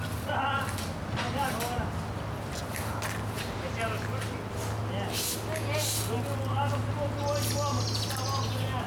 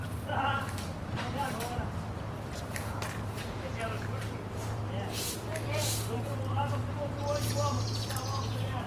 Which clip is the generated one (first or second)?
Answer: second